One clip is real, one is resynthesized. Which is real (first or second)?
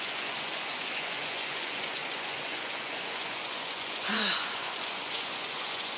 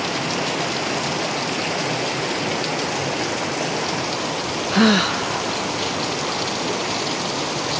second